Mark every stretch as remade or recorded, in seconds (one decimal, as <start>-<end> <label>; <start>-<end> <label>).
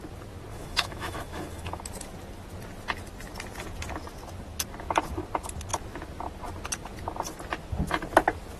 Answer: 0.0-0.5 recorded; 0.5-1.8 remade; 1.8-8.6 recorded